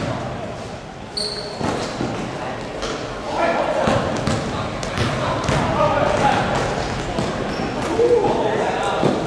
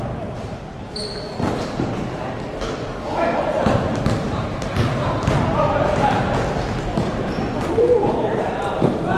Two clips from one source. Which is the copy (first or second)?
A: second